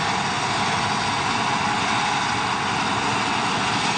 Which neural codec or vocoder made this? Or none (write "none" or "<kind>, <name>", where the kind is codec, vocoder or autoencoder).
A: none